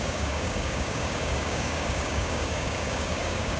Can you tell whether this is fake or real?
fake